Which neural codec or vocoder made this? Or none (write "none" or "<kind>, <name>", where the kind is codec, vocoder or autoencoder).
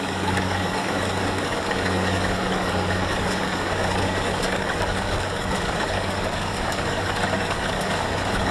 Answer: codec, DAC